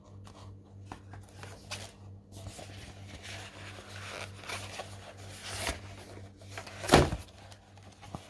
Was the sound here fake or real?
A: real